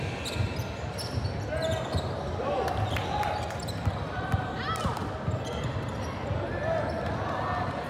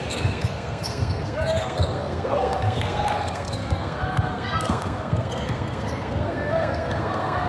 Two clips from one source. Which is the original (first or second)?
first